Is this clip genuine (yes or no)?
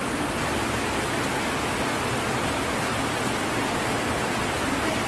yes